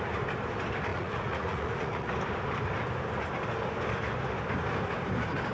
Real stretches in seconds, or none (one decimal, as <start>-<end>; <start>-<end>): 0.0-0.9; 2.1-5.5